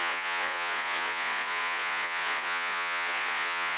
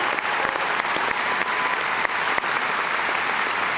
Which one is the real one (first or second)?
second